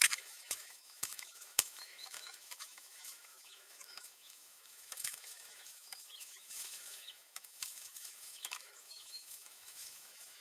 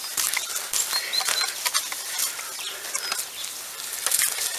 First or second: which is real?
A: second